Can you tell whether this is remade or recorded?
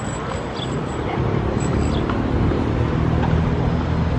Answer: recorded